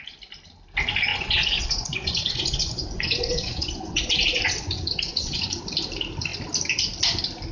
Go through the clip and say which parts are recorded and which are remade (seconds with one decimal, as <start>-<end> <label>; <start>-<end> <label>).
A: 0.0-1.1 recorded; 1.1-5.6 remade; 5.6-7.5 recorded

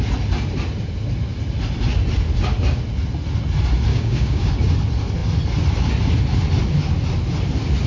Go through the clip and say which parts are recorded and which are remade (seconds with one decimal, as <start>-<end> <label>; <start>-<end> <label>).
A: 0.0-3.9 recorded; 3.9-4.5 remade; 4.5-7.9 recorded